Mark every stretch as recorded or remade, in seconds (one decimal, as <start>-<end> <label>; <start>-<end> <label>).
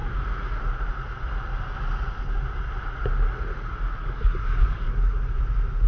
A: 0.0-4.0 recorded; 4.0-5.4 remade; 5.4-5.9 recorded